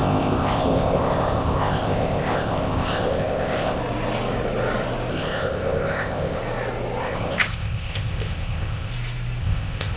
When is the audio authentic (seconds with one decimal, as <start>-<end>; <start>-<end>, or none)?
3.8-5.1; 6.4-7.0; 8.9-9.4